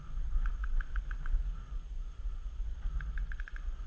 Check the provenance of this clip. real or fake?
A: fake